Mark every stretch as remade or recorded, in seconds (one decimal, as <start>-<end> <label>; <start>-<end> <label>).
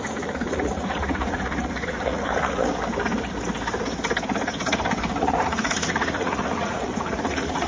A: 0.0-2.7 remade; 2.7-5.2 recorded; 5.2-7.7 remade